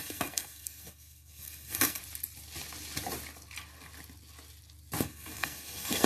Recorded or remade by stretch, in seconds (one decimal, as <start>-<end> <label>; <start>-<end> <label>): 0.0-2.0 remade; 2.0-5.0 recorded; 5.0-6.1 remade